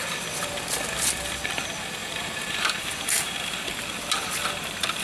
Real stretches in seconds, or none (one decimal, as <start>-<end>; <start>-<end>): 0.0-2.0; 3.6-5.0